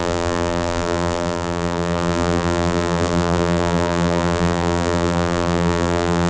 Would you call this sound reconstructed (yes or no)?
yes